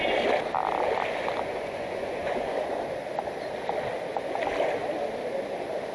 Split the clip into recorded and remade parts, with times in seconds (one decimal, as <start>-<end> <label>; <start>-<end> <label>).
0.0-1.5 recorded; 1.5-2.8 remade; 2.8-5.9 recorded